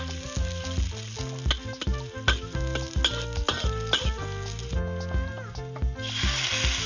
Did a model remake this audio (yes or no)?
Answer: no